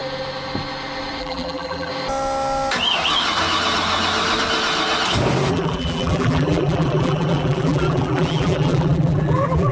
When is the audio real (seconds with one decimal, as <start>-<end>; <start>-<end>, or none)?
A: 0.0-1.2; 1.9-5.5